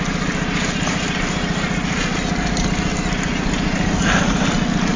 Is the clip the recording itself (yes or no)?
yes